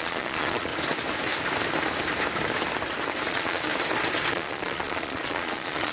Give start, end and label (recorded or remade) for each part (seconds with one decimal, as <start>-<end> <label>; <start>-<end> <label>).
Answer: 0.0-0.7 remade; 0.7-3.3 recorded; 3.3-3.7 remade; 3.7-4.3 recorded; 4.3-5.9 remade